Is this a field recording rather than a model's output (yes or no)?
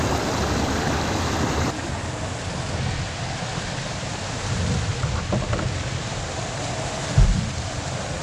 yes